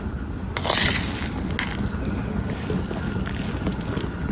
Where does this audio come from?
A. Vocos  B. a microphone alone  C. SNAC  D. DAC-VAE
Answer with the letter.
B